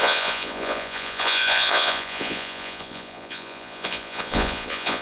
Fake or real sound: fake